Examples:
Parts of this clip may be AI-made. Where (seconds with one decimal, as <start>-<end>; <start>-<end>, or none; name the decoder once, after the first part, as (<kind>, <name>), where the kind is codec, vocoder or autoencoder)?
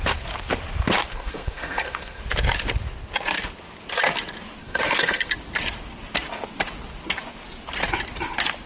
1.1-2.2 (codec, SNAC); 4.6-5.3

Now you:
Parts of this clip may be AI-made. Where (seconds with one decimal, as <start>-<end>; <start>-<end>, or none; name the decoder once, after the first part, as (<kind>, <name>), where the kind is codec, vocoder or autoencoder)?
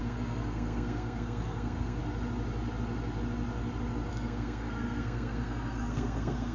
0.0-2.0 (codec, SNAC); 4.1-6.5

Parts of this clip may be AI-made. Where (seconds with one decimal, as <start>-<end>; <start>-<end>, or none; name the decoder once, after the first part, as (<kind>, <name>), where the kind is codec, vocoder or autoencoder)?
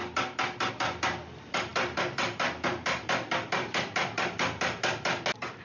none